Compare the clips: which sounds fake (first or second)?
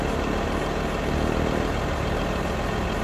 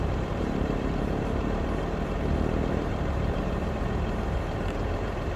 second